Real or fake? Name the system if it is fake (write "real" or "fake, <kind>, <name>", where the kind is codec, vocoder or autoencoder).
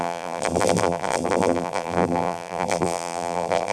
fake, vocoder, BigVGAN v2